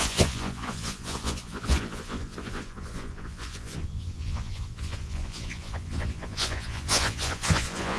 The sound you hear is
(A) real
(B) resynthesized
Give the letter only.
B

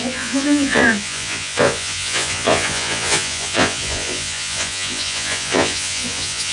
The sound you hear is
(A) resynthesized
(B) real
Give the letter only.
A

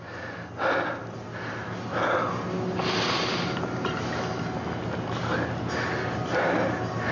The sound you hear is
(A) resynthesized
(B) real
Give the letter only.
B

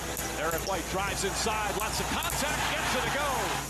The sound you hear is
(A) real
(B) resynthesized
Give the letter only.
A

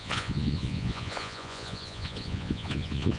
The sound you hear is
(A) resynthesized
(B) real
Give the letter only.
A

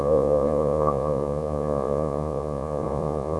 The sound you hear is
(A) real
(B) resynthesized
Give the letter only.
B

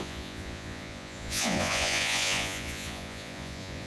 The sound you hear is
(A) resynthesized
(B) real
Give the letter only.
A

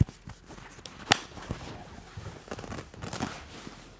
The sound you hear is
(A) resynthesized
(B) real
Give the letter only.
B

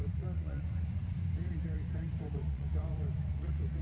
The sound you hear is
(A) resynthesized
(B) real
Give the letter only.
A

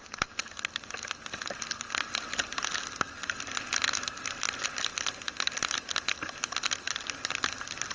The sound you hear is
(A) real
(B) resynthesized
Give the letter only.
A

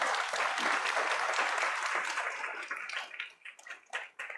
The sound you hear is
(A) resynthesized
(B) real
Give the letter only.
B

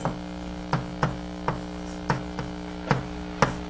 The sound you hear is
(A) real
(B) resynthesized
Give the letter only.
A